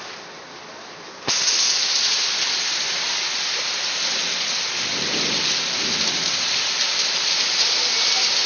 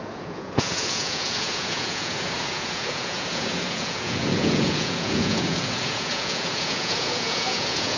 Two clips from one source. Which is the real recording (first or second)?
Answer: first